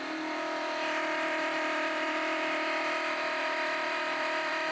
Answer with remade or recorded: remade